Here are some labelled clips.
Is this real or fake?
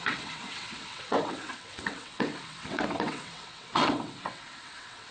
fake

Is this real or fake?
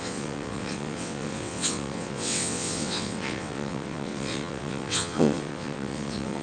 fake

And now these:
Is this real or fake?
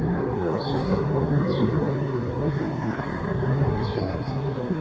fake